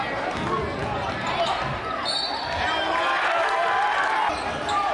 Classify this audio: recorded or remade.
recorded